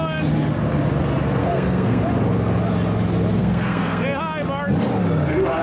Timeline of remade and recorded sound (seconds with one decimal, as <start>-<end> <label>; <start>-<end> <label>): 0.0-1.4 recorded; 1.4-2.0 remade; 2.0-3.4 recorded; 3.4-4.2 remade; 4.2-5.6 recorded